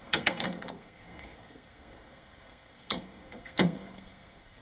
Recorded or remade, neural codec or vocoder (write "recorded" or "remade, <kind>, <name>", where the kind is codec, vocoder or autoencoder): remade, codec, SNAC